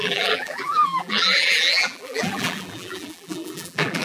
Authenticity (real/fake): fake